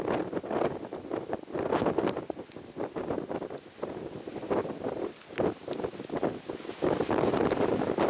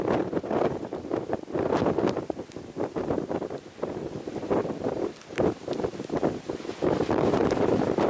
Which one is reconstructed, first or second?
second